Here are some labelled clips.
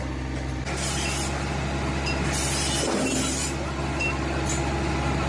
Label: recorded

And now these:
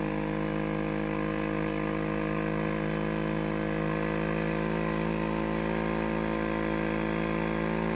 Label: recorded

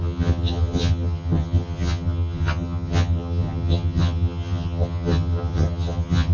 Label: remade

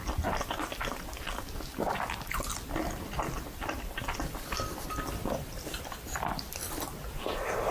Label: recorded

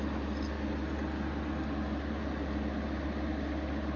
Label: recorded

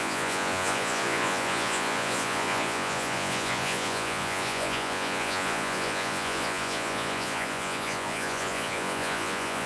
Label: remade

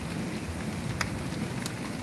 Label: recorded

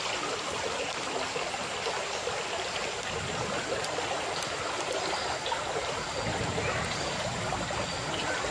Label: recorded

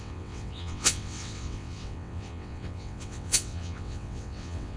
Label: remade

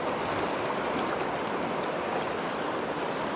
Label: recorded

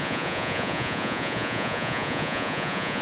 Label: remade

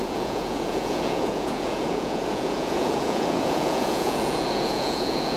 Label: remade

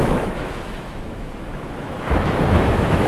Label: remade